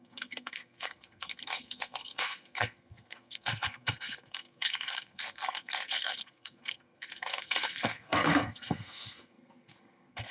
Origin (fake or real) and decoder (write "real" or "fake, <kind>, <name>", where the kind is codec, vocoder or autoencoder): fake, codec, SNAC